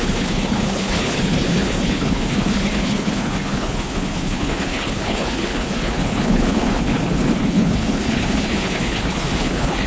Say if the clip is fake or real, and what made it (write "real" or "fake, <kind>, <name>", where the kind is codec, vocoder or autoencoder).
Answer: fake, codec, HILCodec